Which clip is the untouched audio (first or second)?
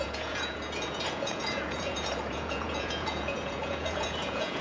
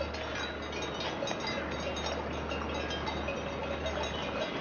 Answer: second